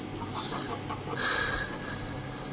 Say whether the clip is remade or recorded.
recorded